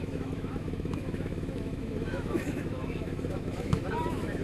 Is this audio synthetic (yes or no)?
yes